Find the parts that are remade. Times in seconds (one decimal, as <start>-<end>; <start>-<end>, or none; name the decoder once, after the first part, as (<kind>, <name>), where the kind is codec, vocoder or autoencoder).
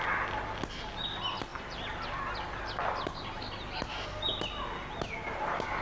none